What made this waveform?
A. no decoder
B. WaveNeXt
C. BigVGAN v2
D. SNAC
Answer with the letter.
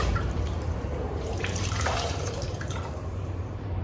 C